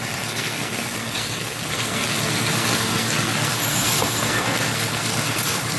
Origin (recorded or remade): remade